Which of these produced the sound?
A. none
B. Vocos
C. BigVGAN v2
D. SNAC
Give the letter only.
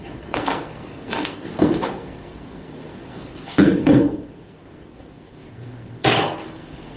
D